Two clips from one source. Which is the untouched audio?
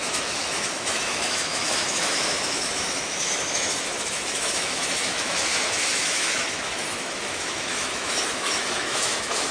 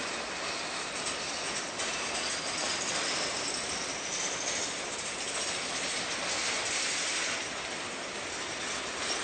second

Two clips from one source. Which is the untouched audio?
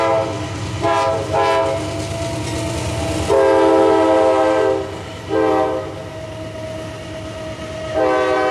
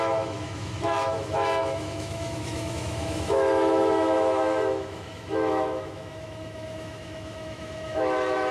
first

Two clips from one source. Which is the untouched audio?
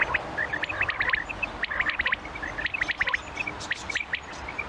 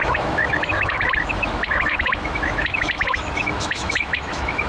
first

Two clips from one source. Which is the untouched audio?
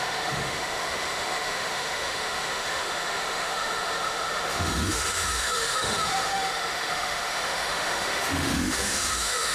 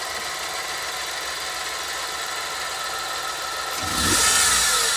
second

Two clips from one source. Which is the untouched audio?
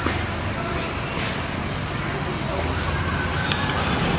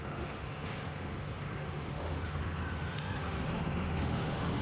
first